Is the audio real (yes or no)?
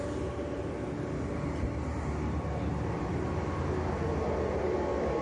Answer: yes